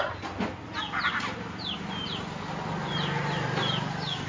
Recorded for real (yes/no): yes